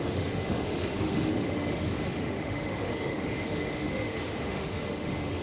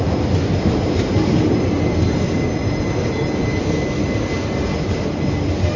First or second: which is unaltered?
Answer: second